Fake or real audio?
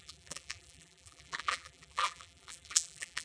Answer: fake